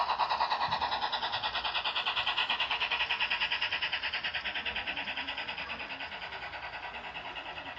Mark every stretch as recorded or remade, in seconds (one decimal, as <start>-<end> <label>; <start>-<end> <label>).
0.0-2.4 recorded; 2.4-3.0 remade; 3.0-7.8 recorded

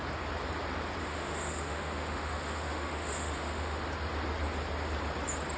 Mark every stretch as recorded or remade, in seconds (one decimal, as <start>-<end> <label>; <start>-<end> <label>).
0.0-1.0 recorded; 1.0-3.8 remade; 3.8-5.6 recorded